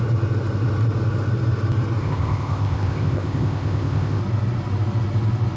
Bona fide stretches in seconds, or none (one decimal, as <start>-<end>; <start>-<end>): 0.0-2.0; 4.2-5.6